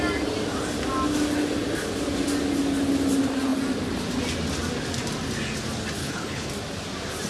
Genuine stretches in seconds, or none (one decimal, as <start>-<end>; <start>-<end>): 0.0-6.0; 6.5-7.3